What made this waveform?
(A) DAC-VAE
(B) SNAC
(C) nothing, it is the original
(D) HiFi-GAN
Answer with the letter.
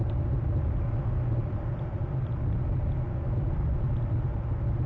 C